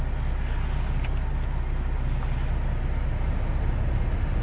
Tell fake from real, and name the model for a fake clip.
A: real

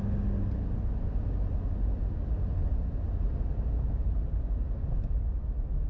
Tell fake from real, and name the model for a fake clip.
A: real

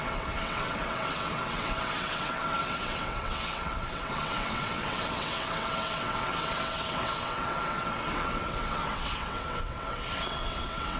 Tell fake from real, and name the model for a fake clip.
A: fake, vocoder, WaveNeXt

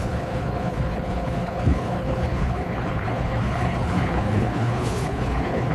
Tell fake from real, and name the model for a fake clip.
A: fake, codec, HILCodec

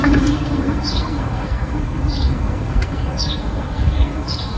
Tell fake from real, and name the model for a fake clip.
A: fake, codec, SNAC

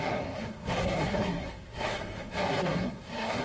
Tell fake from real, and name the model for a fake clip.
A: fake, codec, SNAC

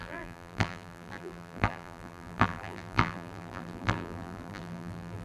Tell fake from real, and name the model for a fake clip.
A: fake, vocoder, BigVGAN v2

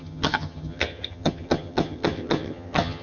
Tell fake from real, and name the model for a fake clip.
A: fake, vocoder, HiFi-GAN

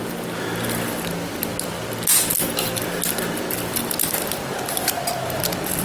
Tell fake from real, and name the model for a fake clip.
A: real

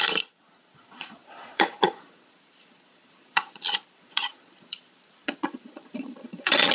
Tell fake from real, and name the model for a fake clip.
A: fake, vocoder, Vocos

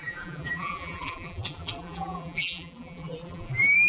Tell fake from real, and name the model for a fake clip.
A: fake, vocoder, BigVGAN v2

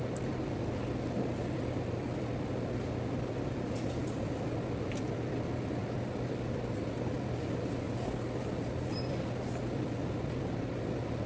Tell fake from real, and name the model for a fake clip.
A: real